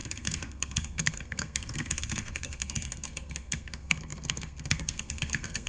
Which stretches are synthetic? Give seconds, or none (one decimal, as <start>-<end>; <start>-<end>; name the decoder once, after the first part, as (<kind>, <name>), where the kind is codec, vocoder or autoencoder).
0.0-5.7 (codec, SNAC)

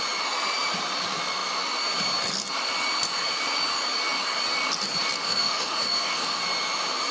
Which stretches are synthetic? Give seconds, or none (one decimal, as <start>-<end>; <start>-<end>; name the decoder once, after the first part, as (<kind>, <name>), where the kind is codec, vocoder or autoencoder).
5.2-6.4 (autoencoder, DAC-VAE)

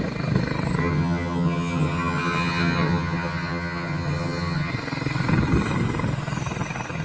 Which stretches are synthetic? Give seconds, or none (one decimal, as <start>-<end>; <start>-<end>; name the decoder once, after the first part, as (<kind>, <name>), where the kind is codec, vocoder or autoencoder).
0.8-4.7 (vocoder, HiFi-GAN)

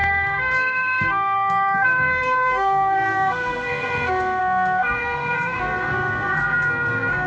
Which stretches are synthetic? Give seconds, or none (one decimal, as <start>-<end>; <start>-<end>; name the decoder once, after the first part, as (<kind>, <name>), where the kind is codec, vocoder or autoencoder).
0.0-7.3 (codec, SNAC)

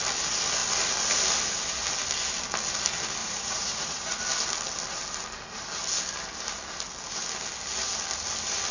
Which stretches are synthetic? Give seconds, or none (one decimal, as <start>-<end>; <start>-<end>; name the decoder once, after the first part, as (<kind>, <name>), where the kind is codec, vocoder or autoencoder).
3.2-4.2 (vocoder, Vocos)